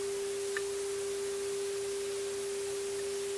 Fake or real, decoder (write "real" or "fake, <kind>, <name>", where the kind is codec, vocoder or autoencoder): real